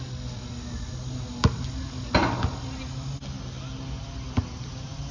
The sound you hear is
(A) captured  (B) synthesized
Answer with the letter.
A